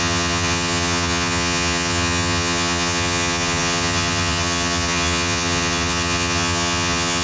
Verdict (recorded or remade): remade